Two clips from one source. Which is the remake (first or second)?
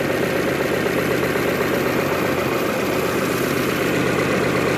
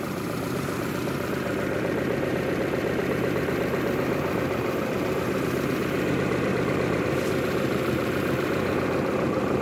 second